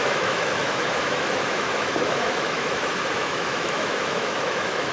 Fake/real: fake